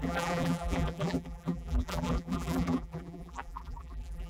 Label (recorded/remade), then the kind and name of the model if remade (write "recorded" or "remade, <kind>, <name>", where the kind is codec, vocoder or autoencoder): remade, vocoder, BigVGAN v2